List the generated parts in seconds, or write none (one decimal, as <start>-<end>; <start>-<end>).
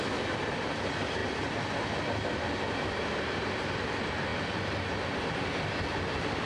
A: none